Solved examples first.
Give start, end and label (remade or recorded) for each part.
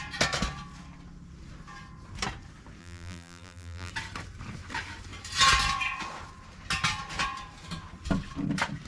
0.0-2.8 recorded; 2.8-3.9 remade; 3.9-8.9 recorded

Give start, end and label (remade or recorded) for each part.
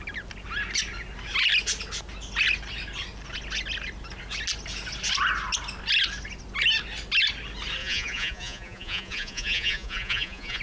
0.0-7.8 recorded; 7.8-10.6 remade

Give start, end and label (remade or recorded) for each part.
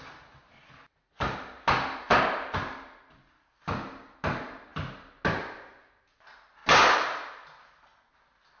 0.0-8.6 recorded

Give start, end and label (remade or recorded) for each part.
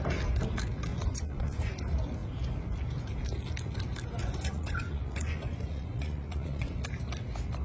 0.0-0.9 recorded; 0.9-1.7 remade; 1.7-4.2 recorded; 4.2-6.8 remade; 6.8-7.6 recorded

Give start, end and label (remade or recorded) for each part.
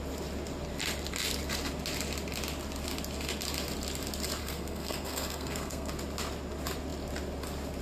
0.0-4.4 recorded; 4.4-5.9 remade; 5.9-7.8 recorded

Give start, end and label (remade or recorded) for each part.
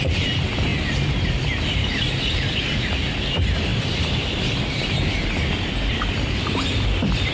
0.0-7.3 remade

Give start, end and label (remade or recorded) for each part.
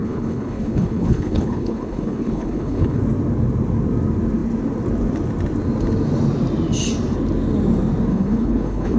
0.0-3.0 remade; 3.0-8.1 recorded; 8.1-9.0 remade